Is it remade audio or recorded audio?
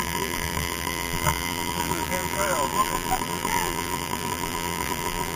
remade